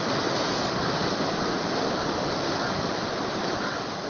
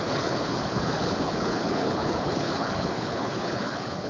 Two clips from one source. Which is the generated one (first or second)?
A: second